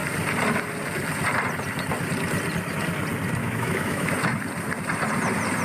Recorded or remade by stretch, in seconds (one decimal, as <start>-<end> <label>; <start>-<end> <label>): 0.0-3.4 recorded; 3.4-4.1 remade; 4.1-5.6 recorded